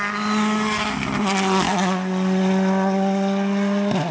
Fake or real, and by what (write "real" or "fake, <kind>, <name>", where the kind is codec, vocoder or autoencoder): real